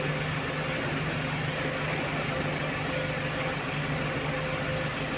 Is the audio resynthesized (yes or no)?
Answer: no